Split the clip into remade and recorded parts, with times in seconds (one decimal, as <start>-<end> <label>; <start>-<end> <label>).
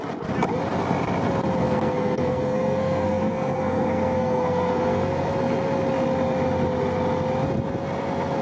0.0-1.6 recorded; 1.6-5.3 remade; 5.3-8.4 recorded